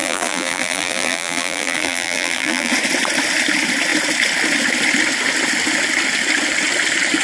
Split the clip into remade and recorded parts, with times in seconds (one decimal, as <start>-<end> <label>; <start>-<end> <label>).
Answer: 0.0-2.7 remade; 2.7-7.2 recorded